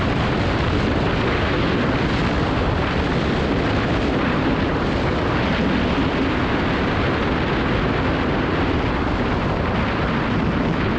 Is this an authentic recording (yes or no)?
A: yes